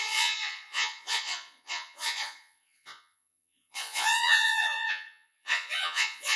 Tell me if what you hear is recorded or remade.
remade